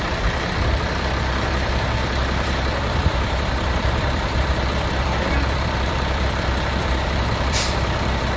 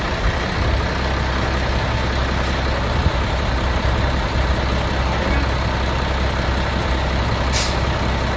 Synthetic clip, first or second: first